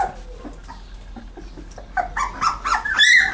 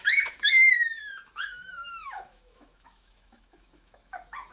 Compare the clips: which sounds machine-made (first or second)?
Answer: second